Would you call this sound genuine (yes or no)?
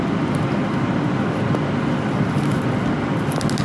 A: yes